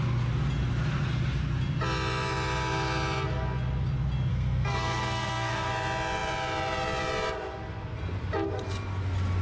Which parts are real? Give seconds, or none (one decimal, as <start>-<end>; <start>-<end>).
0.0-4.3; 5.7-9.4